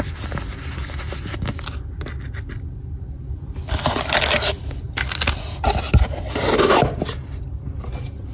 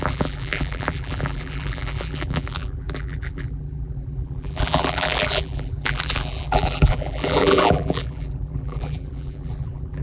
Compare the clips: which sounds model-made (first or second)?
second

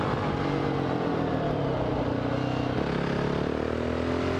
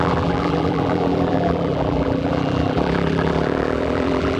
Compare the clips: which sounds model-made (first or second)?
second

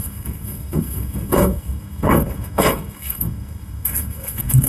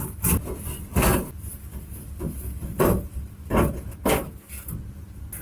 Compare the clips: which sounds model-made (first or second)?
first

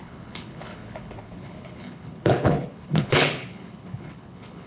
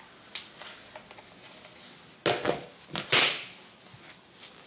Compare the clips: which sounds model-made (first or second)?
first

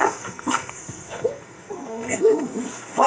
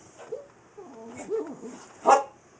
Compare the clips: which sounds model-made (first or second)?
first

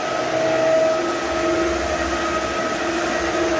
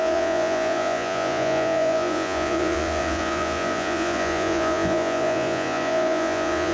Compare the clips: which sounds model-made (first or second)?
second